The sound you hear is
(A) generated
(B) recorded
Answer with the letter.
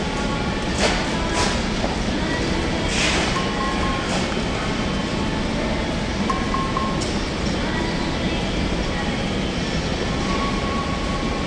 B